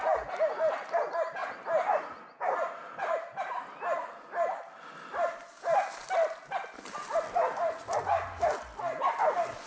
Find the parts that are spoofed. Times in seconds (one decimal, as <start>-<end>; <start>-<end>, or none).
none